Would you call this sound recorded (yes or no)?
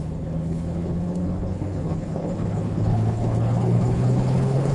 no